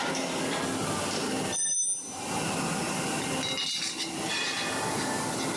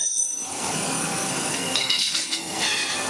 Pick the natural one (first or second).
first